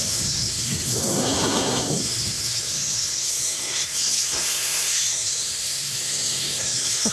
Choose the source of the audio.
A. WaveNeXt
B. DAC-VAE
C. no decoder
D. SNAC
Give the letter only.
D